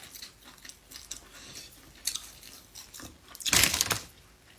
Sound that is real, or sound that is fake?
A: fake